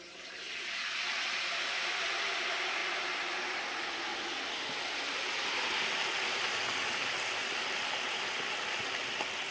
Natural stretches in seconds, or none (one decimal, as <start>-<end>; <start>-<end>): 0.0-9.5